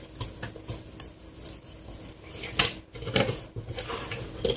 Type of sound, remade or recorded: recorded